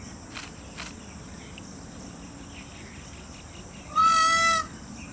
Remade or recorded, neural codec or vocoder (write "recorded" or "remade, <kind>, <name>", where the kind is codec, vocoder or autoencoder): recorded